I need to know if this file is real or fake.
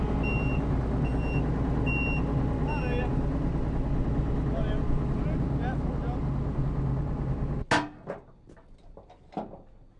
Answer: real